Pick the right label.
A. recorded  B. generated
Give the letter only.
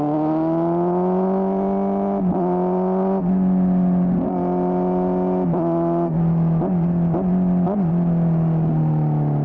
A